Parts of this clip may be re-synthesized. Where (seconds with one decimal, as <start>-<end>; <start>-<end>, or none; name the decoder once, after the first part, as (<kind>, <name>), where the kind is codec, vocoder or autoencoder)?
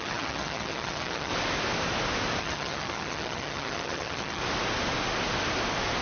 0.0-1.3 (vocoder, HiFi-GAN); 2.4-4.4